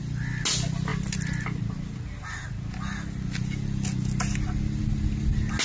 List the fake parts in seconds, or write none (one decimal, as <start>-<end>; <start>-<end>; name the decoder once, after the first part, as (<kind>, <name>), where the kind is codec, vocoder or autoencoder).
none